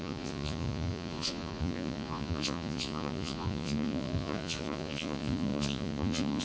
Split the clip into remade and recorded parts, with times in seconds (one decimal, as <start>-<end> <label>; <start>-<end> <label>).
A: 0.0-6.4 remade